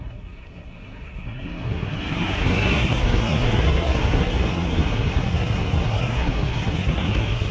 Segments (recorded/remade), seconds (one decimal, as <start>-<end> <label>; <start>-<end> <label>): 0.0-7.5 remade